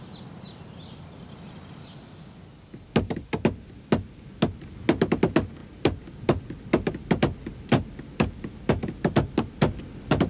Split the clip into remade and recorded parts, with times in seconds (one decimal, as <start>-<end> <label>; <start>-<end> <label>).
0.0-10.3 recorded